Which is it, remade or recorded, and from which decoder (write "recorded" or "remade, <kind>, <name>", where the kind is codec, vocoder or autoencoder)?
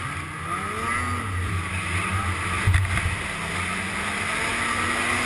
recorded